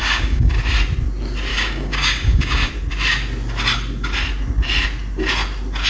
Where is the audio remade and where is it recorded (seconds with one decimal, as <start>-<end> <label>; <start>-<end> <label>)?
0.0-0.5 remade; 0.5-1.5 recorded; 1.5-2.7 remade; 2.7-5.9 recorded